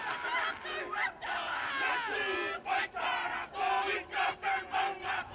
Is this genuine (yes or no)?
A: yes